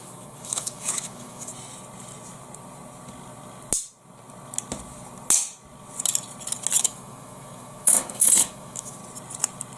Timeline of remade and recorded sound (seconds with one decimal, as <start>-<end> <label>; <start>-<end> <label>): 0.0-1.5 remade; 1.5-6.8 recorded; 6.8-9.0 remade; 9.0-9.8 recorded

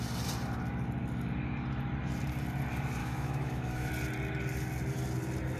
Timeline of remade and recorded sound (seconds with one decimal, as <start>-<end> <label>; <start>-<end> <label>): 0.0-3.0 recorded; 3.0-3.9 remade; 3.9-5.6 recorded

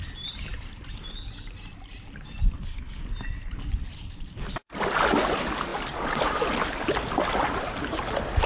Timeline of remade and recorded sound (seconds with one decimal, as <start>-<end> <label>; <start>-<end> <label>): 0.0-8.5 recorded

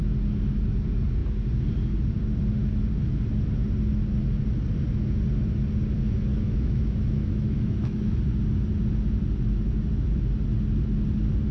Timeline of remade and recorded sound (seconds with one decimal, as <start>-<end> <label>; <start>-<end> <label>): 0.0-6.3 recorded; 6.3-8.2 remade; 8.2-11.5 recorded

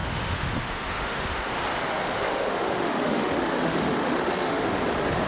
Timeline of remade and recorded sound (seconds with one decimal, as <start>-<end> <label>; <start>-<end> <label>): 0.0-1.5 remade; 1.5-2.2 recorded; 2.2-4.8 remade; 4.8-5.3 recorded

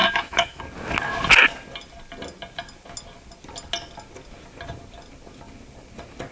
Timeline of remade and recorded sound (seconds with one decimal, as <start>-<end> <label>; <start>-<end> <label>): 0.0-0.6 remade; 0.6-6.3 recorded

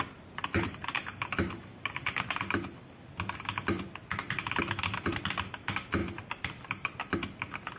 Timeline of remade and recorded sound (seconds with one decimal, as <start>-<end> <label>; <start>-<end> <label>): 0.0-7.8 recorded

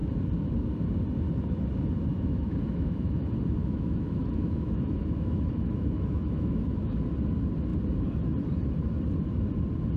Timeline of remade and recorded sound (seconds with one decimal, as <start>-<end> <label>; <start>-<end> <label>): 0.0-2.1 recorded; 2.1-3.2 remade; 3.2-3.6 recorded; 3.6-7.0 remade; 7.0-10.0 recorded